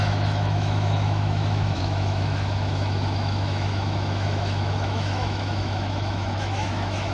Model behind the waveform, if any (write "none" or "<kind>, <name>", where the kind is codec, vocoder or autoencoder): autoencoder, DAC-VAE